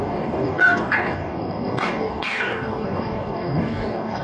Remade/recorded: remade